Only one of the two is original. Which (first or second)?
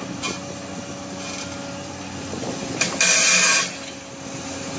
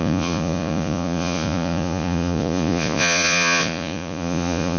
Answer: first